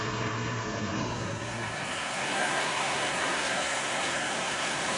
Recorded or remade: remade